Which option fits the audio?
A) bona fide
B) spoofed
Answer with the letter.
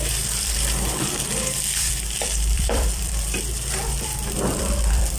B